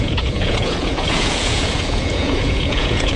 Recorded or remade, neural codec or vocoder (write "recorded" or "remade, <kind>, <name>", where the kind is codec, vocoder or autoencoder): remade, vocoder, Vocos